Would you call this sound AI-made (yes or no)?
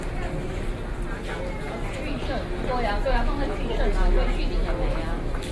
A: no